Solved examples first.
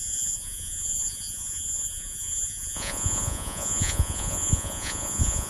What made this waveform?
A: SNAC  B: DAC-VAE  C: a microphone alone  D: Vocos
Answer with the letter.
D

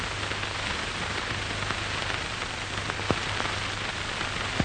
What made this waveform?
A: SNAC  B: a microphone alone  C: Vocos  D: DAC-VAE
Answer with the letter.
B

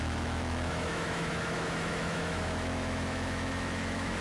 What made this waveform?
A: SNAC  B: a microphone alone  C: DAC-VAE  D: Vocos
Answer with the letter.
C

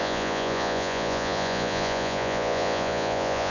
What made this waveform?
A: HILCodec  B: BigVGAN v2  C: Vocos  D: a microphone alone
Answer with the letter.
C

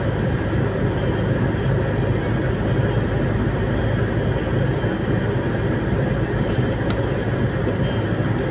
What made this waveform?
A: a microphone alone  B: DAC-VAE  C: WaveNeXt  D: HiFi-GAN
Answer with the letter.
A